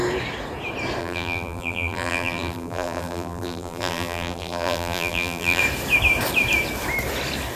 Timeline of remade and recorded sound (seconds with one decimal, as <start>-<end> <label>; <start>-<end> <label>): 0.0-1.0 recorded; 1.0-5.6 remade; 5.6-7.6 recorded